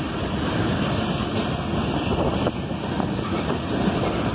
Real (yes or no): yes